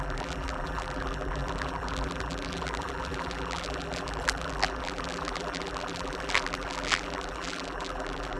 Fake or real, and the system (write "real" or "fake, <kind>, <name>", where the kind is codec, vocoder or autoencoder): fake, vocoder, BigVGAN v2